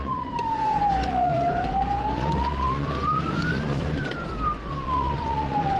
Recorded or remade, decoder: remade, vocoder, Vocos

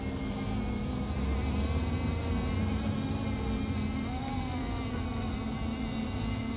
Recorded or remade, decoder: recorded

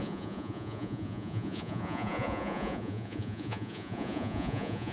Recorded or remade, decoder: remade, vocoder, Vocos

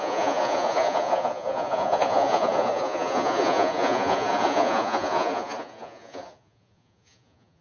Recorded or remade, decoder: remade, vocoder, Vocos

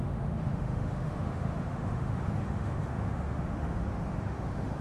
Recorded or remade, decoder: remade, autoencoder, DAC-VAE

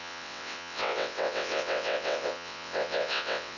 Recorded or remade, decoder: remade, vocoder, WaveNeXt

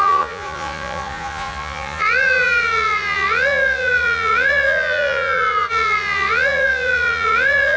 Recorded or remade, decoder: remade, vocoder, Vocos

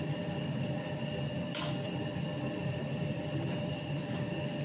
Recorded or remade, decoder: remade, vocoder, BigVGAN v2